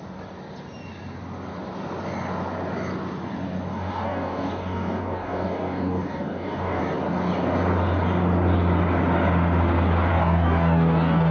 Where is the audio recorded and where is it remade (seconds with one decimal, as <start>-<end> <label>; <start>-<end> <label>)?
0.0-3.7 recorded; 3.7-6.8 remade; 6.8-10.1 recorded; 10.1-11.3 remade